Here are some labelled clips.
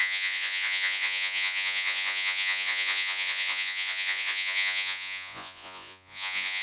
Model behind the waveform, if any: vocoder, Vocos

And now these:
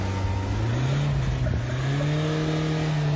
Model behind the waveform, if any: none